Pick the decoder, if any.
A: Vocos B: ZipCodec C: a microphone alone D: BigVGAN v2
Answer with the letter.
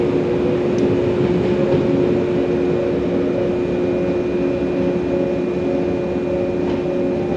C